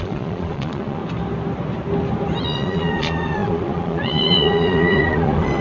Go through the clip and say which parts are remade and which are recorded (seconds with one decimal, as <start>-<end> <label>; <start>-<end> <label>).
0.0-1.0 remade; 1.0-2.4 recorded; 2.4-5.6 remade